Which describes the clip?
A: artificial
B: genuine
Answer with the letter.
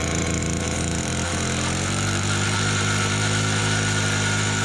A